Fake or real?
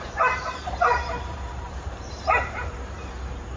fake